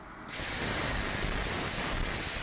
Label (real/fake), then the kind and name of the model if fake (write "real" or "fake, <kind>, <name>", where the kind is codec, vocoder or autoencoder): real